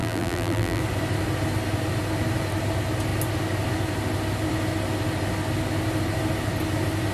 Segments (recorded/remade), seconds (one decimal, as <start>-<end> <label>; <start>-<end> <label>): 0.0-0.8 remade; 0.8-7.1 recorded